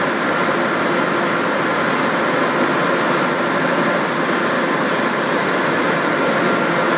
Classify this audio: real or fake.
real